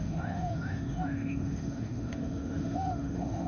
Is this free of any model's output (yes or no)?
no